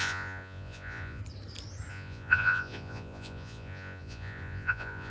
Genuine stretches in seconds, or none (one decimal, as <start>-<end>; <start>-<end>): 1.2-1.9